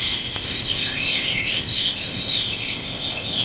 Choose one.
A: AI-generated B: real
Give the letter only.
A